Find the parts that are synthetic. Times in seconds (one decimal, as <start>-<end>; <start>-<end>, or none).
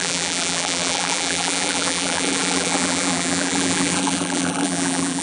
0.0-5.2